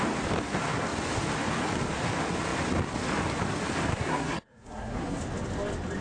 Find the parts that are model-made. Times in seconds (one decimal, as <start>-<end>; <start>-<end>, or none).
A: 3.9-5.2